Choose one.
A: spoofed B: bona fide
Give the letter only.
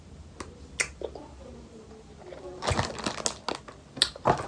B